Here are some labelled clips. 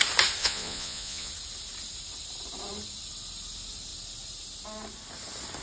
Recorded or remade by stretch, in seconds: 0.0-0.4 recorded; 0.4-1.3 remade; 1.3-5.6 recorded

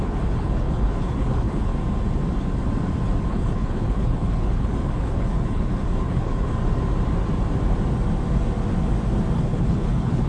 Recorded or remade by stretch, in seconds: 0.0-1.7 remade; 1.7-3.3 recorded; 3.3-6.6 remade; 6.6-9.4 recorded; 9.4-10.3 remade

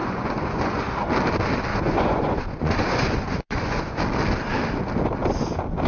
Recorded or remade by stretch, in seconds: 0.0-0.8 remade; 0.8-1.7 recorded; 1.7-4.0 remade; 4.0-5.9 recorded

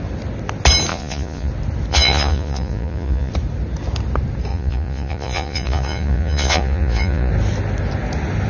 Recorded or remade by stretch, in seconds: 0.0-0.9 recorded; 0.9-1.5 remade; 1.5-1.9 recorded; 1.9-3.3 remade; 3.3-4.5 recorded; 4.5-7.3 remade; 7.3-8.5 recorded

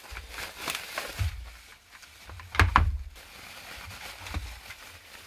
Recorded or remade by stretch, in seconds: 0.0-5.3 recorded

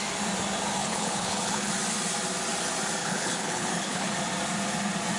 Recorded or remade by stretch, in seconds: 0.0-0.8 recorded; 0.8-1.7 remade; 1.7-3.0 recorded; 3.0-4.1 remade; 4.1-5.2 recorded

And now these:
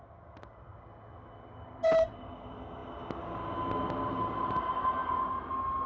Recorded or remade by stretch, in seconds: 0.0-5.9 recorded

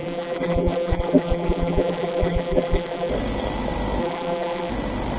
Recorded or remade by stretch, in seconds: 0.0-3.1 remade; 3.1-4.0 recorded; 4.0-4.7 remade; 4.7-5.2 recorded